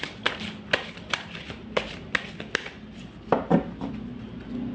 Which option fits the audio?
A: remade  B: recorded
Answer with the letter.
B